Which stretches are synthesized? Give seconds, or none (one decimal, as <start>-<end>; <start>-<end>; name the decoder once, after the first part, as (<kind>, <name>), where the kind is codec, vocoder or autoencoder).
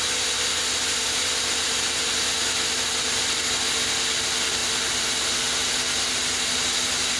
none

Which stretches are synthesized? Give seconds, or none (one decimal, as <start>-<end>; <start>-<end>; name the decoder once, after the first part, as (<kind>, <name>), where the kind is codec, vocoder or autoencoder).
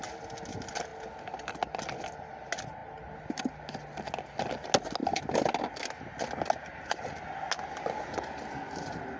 none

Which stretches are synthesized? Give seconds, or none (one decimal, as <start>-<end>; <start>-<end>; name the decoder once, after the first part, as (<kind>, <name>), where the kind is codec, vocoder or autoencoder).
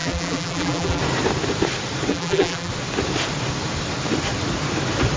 0.0-1.0 (vocoder, BigVGAN v2); 2.1-2.7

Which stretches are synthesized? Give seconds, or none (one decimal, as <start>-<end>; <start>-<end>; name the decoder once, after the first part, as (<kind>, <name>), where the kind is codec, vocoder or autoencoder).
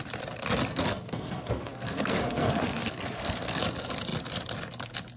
0.7-3.6 (codec, SNAC)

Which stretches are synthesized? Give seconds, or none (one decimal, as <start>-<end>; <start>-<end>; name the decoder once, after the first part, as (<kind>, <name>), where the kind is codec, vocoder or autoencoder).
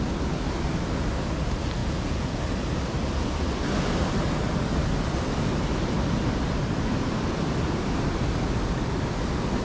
1.8-2.4 (vocoder, Vocos)